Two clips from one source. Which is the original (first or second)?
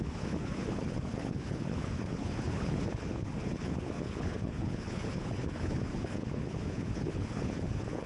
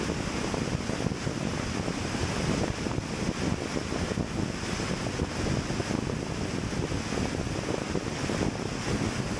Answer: second